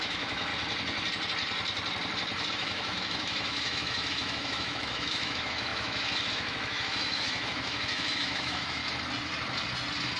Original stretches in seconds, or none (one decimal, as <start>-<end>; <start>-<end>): 0.5-2.5; 8.8-10.2